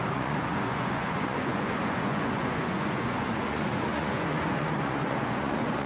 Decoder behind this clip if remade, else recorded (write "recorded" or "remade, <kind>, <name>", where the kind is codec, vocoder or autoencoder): remade, vocoder, Vocos